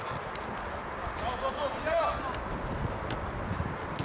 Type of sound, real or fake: real